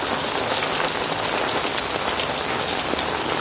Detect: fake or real real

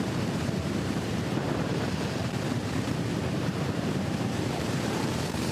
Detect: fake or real fake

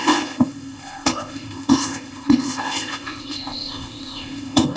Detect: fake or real fake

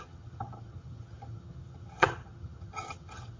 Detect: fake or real fake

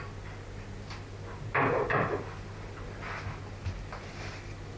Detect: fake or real real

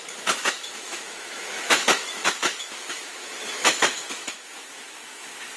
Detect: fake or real fake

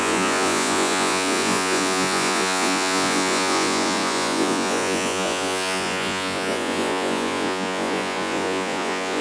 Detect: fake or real fake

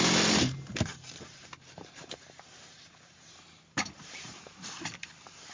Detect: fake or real fake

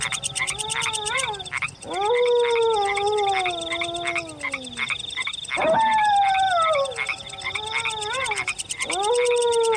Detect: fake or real real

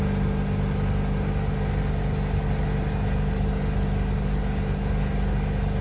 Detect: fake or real real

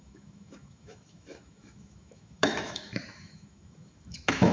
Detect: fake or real fake